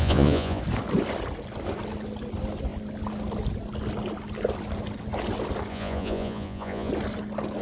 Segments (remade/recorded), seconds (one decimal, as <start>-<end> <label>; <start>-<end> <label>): 0.0-0.6 remade; 0.6-5.7 recorded; 5.7-6.9 remade; 6.9-7.6 recorded